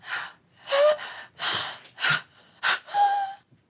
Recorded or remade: recorded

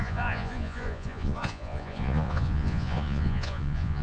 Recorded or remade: remade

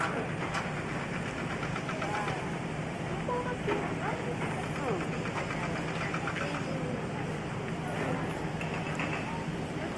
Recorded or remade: recorded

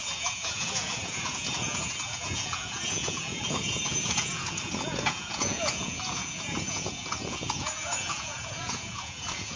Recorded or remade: remade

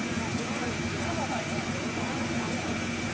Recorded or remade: remade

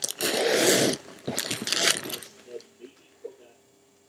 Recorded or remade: recorded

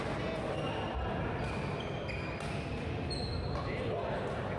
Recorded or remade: recorded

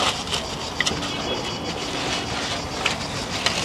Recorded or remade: recorded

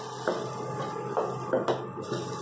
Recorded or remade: recorded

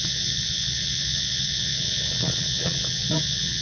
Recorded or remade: remade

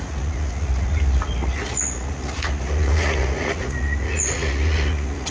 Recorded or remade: remade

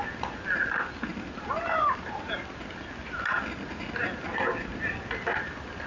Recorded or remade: recorded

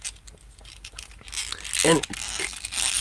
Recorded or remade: recorded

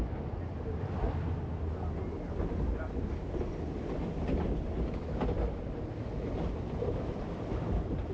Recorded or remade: recorded